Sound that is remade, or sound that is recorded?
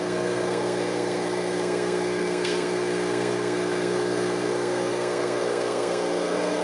remade